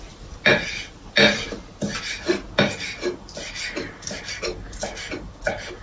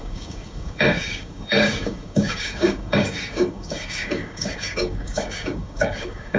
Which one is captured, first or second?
first